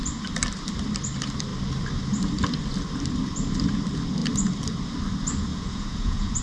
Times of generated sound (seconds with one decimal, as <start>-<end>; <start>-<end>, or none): 5.5-6.4